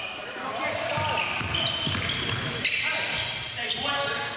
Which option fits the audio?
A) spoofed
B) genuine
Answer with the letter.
B